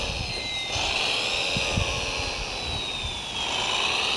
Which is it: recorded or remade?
recorded